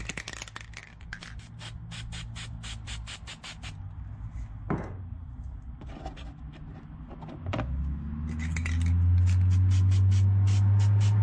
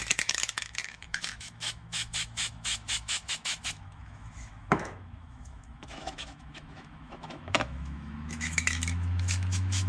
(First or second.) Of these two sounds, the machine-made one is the second